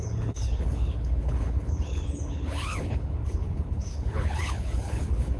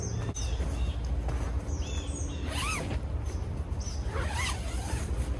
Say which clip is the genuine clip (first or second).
second